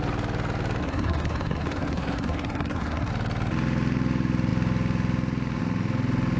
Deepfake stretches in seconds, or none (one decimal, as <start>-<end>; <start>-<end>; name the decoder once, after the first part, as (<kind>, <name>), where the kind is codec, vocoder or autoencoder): 0.8-3.1 (codec, SNAC)